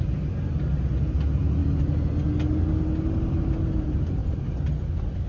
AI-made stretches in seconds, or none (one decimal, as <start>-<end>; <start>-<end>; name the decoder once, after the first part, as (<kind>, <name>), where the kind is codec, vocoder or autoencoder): none